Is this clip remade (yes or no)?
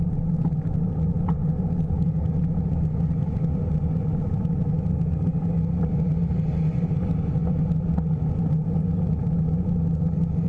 no